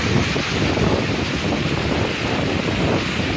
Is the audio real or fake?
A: real